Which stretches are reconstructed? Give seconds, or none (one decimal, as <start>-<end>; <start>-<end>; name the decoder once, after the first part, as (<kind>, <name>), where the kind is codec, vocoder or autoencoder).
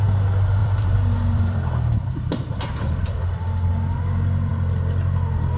0.6-3.7 (vocoder, BigVGAN v2)